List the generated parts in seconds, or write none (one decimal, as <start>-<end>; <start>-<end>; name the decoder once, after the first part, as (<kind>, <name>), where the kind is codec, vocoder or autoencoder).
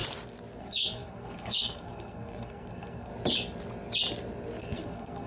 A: 0.6-3.1 (codec, SNAC); 4.6-5.3